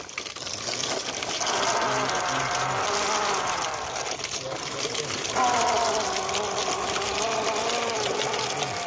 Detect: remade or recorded recorded